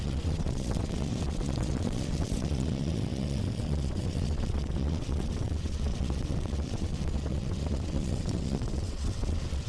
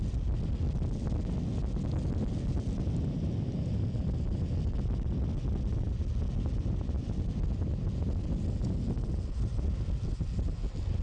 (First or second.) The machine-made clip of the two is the first